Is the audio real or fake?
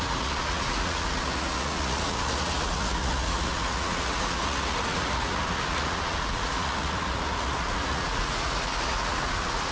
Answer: fake